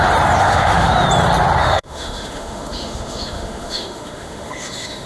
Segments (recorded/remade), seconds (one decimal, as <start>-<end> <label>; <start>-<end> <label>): 0.0-0.4 recorded; 0.4-0.9 remade; 0.9-1.6 recorded; 1.6-5.1 remade